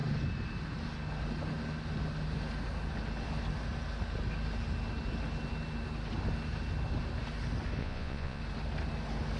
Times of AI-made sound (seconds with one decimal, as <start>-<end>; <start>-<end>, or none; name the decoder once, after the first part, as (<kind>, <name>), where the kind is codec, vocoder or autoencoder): 7.8-8.4 (vocoder, Vocos)